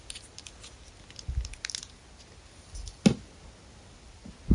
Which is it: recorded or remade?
recorded